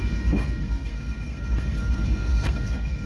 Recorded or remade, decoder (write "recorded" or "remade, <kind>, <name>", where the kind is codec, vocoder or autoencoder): remade, codec, SNAC